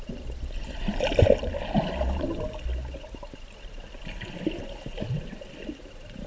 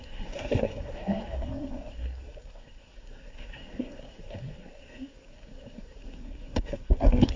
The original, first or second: first